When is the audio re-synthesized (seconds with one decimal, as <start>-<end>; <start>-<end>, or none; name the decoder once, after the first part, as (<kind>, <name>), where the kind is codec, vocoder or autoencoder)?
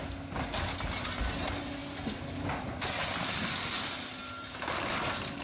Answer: none